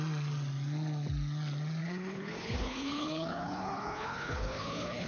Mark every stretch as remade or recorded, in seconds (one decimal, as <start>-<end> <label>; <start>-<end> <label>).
0.0-1.8 recorded; 1.8-5.1 remade